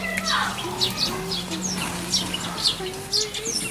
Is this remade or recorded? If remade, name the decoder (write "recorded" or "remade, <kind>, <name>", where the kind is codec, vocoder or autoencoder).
recorded